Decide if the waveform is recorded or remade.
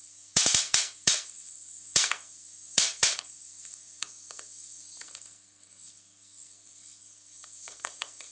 remade